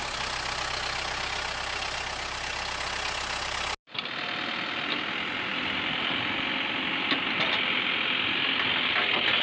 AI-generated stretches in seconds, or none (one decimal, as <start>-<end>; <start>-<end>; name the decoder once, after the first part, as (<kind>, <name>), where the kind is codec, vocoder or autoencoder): none